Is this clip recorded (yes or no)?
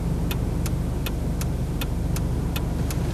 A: yes